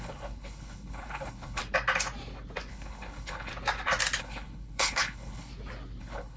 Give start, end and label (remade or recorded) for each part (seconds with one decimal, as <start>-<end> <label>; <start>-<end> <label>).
0.0-1.6 remade; 1.6-2.7 recorded; 2.7-3.5 remade; 3.5-4.2 recorded; 4.2-5.5 remade; 5.5-6.0 recorded; 6.0-6.4 remade